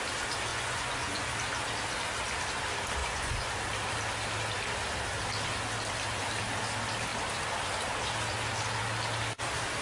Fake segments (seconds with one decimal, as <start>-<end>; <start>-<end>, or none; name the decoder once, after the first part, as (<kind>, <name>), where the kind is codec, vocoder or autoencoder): 0.5-1.3 (vocoder, Vocos); 3.0-3.6